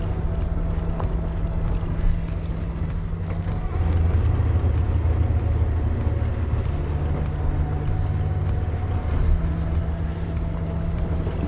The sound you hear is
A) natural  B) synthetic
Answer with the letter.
A